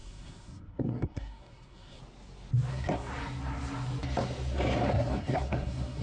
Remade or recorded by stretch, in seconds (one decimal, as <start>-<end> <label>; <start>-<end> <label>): 0.0-2.0 remade; 2.0-2.7 recorded; 2.7-3.1 remade; 3.1-4.9 recorded; 4.9-6.0 remade